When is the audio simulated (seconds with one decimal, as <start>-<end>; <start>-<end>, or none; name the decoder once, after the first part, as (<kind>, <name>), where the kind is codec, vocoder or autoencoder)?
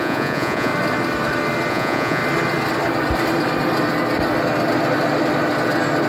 0.0-0.7 (vocoder, Vocos); 1.7-2.2